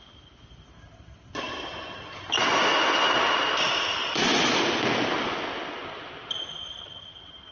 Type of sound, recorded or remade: recorded